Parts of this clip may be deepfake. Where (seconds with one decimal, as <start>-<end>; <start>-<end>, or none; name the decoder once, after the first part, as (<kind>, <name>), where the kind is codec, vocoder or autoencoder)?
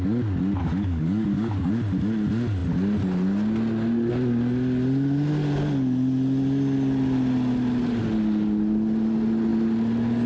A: 0.6-1.7 (codec, DAC)